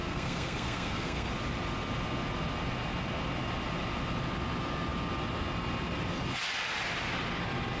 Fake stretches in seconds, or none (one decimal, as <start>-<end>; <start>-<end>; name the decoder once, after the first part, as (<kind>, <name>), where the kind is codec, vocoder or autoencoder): 0.0-1.3 (codec, SNAC)